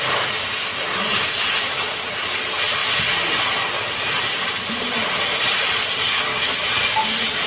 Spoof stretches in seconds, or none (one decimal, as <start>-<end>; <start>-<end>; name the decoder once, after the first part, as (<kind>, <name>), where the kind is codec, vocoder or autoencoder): 0.0-0.7 (vocoder, BigVGAN v2); 1.6-2.8; 4.5-6.3; 7.0-7.5